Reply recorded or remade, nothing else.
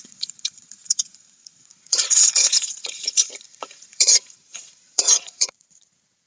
remade